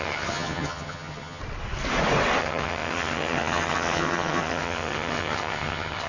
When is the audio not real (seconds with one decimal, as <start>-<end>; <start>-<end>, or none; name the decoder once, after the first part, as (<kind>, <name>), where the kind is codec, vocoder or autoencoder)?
0.0-1.4 (vocoder, HiFi-GAN); 2.4-6.1